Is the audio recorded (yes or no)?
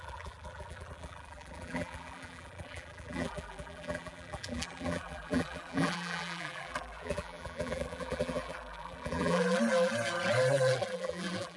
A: no